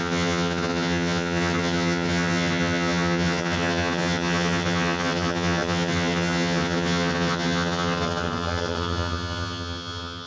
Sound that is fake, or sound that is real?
fake